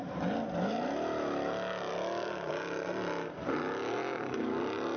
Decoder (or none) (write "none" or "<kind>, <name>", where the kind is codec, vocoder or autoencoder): none